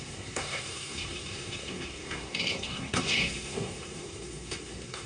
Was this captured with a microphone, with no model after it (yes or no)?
no